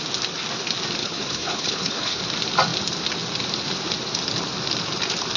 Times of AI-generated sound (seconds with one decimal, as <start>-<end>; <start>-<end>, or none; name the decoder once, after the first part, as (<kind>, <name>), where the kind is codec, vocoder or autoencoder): 1.0-2.2 (codec, HILCodec)